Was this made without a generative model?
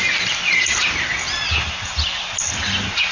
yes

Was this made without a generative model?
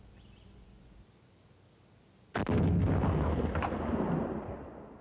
yes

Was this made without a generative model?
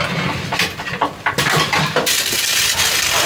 yes